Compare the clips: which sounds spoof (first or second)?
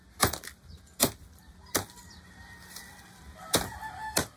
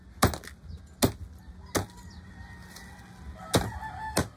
first